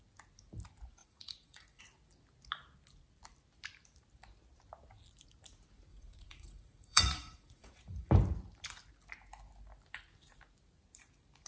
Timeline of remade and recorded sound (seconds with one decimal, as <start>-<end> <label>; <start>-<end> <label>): 0.0-1.0 recorded; 1.0-1.8 remade; 1.8-5.9 recorded; 5.9-8.1 remade; 8.1-11.5 recorded